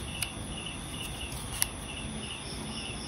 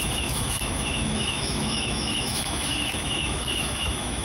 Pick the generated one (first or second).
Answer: second